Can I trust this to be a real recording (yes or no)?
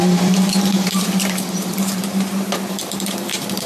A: no